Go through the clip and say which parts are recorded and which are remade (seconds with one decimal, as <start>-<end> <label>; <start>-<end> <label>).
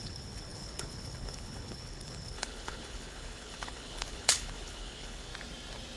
0.0-5.3 remade; 5.3-6.0 recorded